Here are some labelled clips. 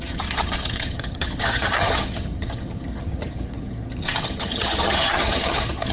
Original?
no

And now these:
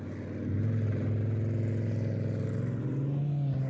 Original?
yes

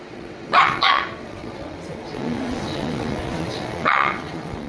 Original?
no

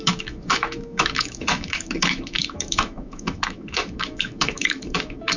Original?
no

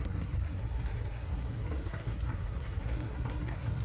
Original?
no